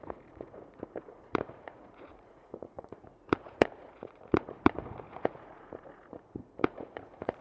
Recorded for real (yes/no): no